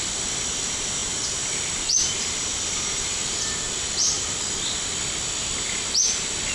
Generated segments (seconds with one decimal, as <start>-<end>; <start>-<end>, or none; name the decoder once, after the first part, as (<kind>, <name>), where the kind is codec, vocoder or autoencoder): 1.0-4.4 (vocoder, BigVGAN v2)